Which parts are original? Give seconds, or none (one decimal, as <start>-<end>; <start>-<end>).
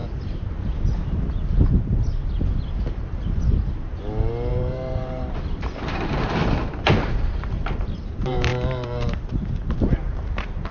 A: 0.0-4.5; 8.5-9.7